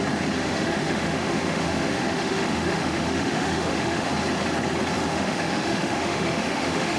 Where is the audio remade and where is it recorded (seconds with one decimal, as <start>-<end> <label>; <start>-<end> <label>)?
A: 0.0-0.4 recorded; 0.4-4.1 remade; 4.1-5.1 recorded; 5.1-7.0 remade